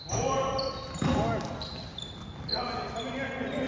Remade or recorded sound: recorded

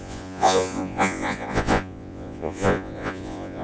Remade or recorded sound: remade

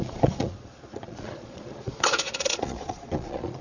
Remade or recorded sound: remade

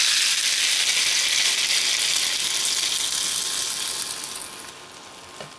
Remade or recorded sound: recorded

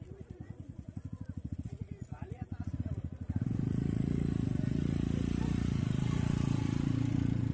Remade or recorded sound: remade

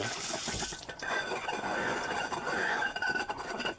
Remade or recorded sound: remade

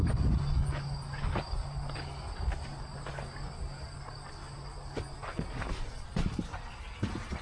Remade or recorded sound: recorded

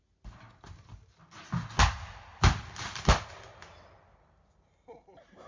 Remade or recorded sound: recorded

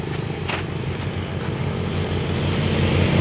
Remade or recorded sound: recorded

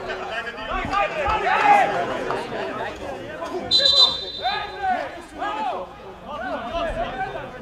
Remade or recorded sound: remade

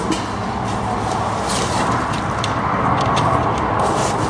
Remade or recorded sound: recorded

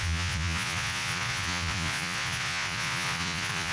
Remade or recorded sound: remade